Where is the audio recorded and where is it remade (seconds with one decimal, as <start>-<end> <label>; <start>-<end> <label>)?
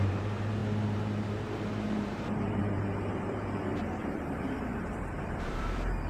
0.0-6.1 remade